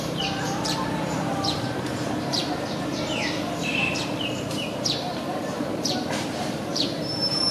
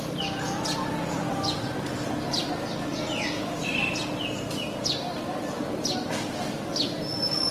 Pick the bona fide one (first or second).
second